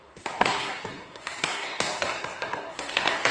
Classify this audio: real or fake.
fake